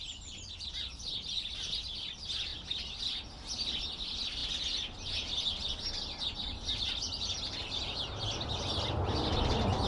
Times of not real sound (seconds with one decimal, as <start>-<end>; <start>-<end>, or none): none